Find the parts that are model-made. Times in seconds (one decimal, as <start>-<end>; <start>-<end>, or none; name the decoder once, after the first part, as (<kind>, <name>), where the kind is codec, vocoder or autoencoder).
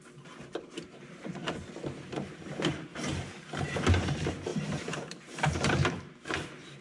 0.0-1.4 (vocoder, BigVGAN v2); 2.1-2.9; 3.9-6.8